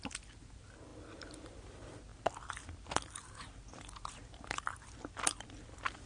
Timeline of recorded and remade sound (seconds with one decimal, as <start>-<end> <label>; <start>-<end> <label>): 0.0-6.1 recorded